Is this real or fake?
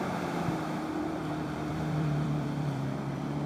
fake